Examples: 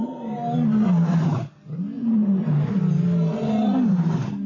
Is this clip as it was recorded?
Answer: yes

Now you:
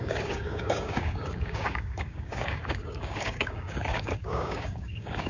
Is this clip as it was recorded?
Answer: no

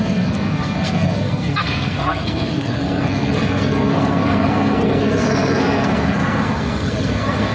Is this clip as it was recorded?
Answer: no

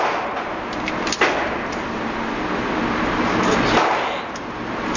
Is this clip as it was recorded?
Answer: yes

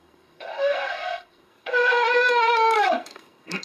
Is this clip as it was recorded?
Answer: no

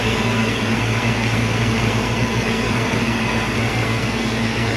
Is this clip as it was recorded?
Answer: no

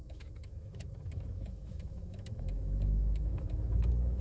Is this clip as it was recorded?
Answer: no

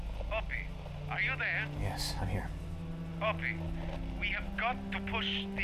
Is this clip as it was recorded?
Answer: yes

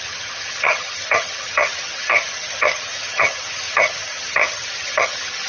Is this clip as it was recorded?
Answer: no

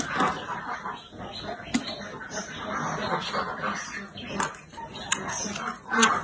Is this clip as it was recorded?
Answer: yes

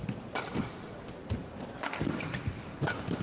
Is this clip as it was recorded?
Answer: yes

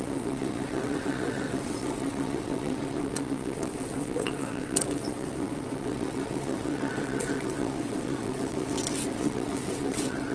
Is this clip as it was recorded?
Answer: no